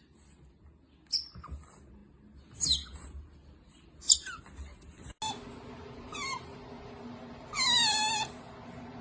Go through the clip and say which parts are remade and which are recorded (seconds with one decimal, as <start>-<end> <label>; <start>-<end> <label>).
0.0-9.0 recorded